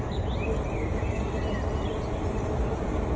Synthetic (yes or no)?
no